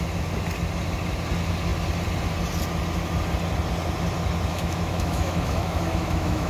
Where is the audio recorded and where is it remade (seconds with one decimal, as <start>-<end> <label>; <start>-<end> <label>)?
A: 0.0-4.5 recorded; 4.5-6.5 remade